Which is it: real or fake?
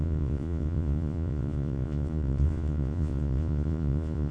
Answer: fake